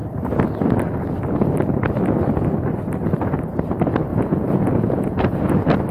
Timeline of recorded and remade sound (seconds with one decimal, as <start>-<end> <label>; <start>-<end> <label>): 0.0-4.1 recorded; 4.1-5.5 remade; 5.5-5.9 recorded

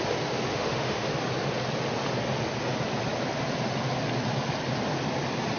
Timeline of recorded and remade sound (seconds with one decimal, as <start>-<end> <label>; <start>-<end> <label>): 0.0-0.5 recorded; 0.5-1.1 remade; 1.1-5.6 recorded

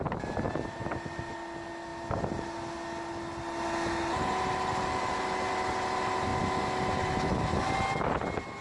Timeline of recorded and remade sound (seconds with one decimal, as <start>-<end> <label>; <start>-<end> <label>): 0.0-8.6 recorded

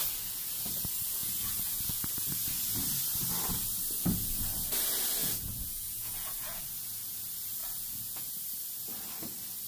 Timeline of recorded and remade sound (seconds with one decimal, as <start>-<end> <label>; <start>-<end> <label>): 0.0-1.2 recorded; 1.2-2.0 remade; 2.0-5.2 recorded; 5.2-6.6 remade; 6.6-7.6 recorded; 7.6-8.3 remade; 8.3-9.7 recorded

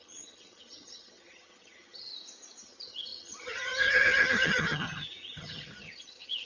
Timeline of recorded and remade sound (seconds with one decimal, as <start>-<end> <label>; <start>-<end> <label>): 0.0-2.1 remade; 2.1-2.6 recorded; 2.6-6.4 remade

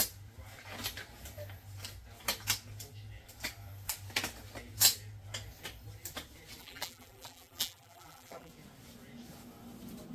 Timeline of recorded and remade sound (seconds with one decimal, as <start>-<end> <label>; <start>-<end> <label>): 0.0-6.6 recorded; 6.6-8.5 remade; 8.5-10.1 recorded

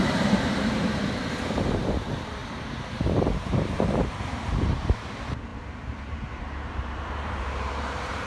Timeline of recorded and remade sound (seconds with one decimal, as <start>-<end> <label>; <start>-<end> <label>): 0.0-8.3 remade

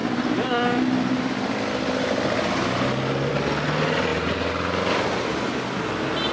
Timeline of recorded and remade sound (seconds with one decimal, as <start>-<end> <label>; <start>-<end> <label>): 0.0-6.3 recorded